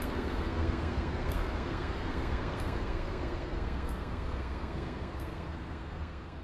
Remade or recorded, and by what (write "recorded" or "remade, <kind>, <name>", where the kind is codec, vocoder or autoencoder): remade, codec, SNAC